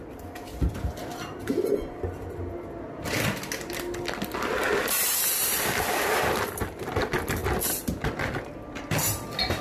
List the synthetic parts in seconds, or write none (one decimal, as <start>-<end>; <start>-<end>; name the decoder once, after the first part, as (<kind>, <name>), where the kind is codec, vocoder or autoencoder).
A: 0.0-1.0 (vocoder, BigVGAN v2); 5.3-7.4; 8.5-9.6